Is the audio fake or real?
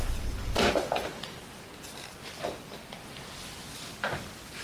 real